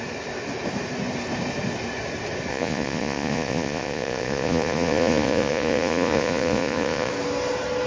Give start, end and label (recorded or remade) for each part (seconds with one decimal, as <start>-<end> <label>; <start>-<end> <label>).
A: 0.0-2.5 recorded; 2.5-7.1 remade; 7.1-7.9 recorded